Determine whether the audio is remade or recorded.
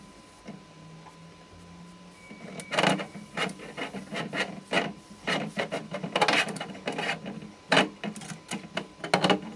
recorded